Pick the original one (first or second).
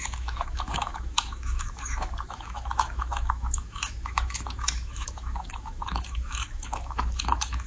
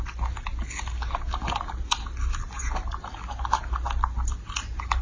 second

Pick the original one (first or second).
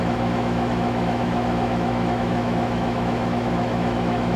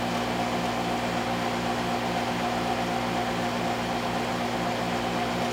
second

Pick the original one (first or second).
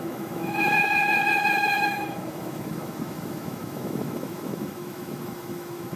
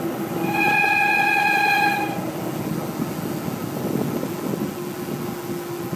second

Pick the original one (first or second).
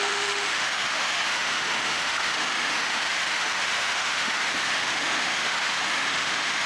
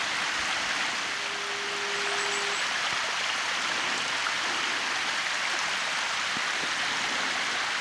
second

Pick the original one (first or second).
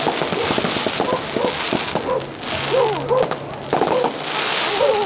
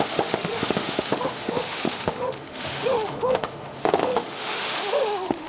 first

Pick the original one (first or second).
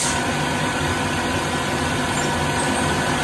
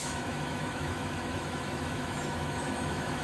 first